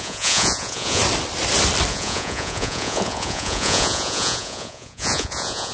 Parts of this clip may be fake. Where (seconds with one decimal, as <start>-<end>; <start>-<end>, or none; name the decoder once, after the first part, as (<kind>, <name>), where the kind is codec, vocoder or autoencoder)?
0.0-1.0 (vocoder, Vocos); 1.9-5.7